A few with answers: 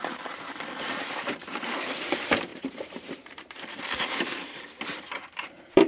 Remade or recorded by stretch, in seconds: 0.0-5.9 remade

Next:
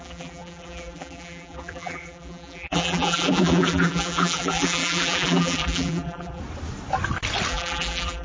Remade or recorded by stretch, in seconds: 0.0-6.4 remade; 6.4-7.5 recorded; 7.5-8.2 remade

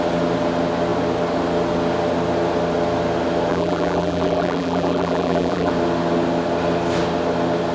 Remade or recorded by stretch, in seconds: 0.0-3.5 recorded; 3.5-5.7 remade; 5.7-7.7 recorded

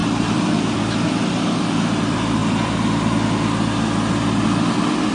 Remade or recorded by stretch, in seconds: 0.0-0.5 remade; 0.5-5.1 recorded